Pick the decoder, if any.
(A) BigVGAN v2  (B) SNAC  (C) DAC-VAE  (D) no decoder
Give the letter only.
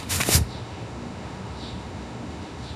C